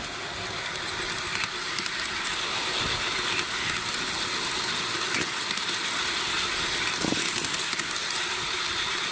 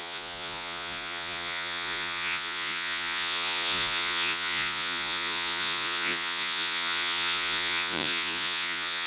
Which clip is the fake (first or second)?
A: second